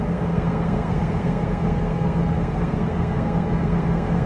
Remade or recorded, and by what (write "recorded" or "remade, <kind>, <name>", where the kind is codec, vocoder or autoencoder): remade, codec, SNAC